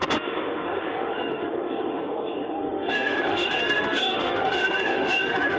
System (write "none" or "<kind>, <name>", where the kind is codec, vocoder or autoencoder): autoencoder, DAC-VAE